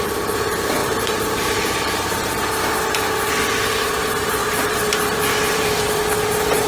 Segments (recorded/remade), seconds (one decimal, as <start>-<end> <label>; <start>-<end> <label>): 0.0-0.8 recorded; 0.8-2.2 remade; 2.2-4.4 recorded; 4.4-6.0 remade; 6.0-6.7 recorded